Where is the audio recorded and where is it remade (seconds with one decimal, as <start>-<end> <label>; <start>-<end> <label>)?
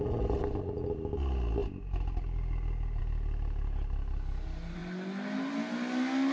0.0-6.3 recorded